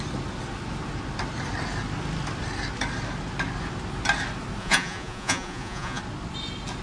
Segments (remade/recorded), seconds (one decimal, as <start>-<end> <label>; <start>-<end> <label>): 0.0-4.6 recorded; 4.6-6.0 remade; 6.0-6.8 recorded